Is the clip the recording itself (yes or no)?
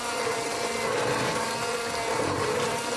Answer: yes